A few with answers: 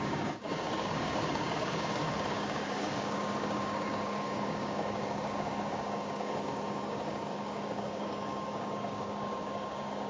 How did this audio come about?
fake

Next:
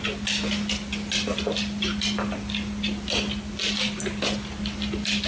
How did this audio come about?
real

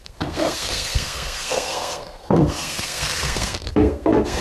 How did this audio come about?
fake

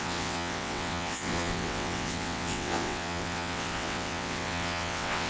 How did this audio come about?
fake